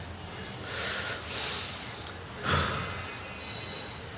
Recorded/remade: recorded